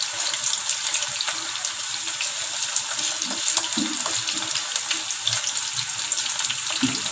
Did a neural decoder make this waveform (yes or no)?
no